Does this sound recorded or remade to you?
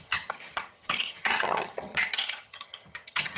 remade